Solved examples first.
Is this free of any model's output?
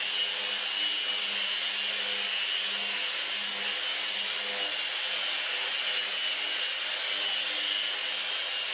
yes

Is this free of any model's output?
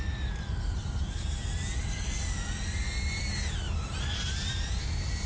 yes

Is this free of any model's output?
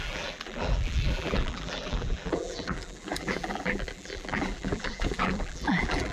no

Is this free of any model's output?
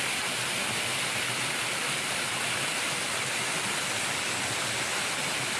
yes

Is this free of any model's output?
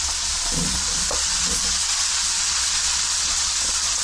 no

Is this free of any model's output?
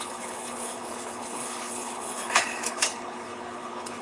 no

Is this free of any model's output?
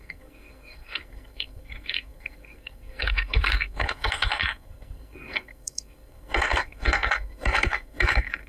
no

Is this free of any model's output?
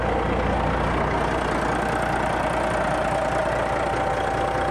yes